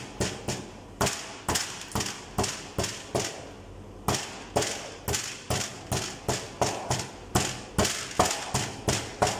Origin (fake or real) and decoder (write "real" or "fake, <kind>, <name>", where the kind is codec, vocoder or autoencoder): real